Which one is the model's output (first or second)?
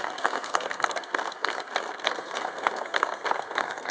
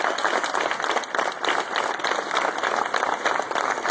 first